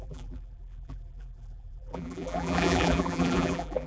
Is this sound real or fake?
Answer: fake